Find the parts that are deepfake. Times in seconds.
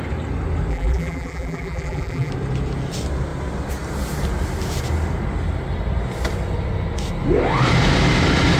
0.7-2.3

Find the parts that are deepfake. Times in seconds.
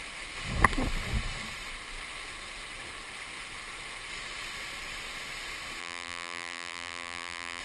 5.8-7.6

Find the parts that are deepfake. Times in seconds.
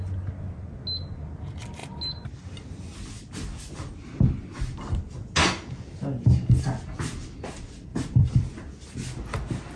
7.9-8.5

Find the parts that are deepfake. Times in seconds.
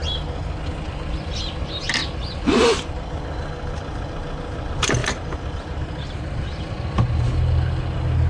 2.0-2.8; 5.0-6.6